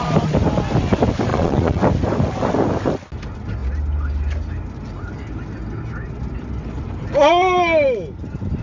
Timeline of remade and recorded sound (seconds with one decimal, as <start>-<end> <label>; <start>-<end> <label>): 0.0-1.3 recorded; 1.3-1.8 remade; 1.8-8.6 recorded